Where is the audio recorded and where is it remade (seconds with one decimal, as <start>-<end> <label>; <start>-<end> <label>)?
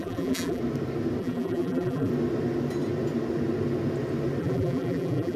0.0-0.6 remade; 0.6-1.2 recorded; 1.2-2.1 remade; 2.1-4.4 recorded; 4.4-5.4 remade